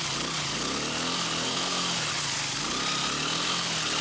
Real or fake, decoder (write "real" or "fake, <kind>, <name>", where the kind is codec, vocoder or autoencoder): real